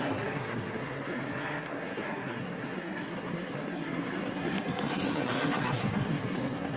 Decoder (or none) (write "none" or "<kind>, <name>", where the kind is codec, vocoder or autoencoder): codec, SNAC